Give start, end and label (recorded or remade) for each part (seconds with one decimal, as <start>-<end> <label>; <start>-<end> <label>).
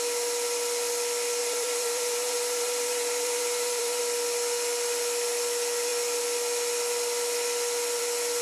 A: 0.0-1.4 recorded; 1.4-4.0 remade; 4.0-8.4 recorded